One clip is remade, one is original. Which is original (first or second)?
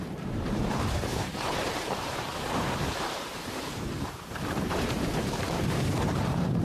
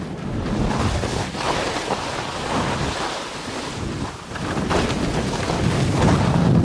second